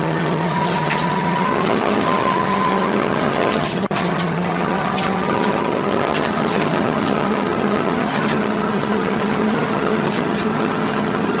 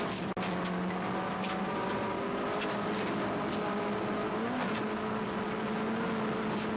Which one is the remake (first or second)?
first